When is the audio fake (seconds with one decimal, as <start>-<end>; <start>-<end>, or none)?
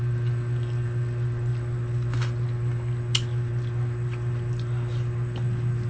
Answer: none